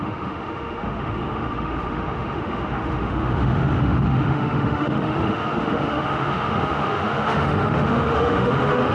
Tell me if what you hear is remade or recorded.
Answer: remade